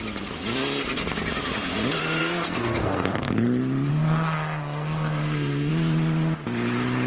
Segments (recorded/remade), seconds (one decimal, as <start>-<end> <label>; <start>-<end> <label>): 0.0-2.2 recorded; 2.2-3.3 remade; 3.3-3.9 recorded; 3.9-5.7 remade; 5.7-7.1 recorded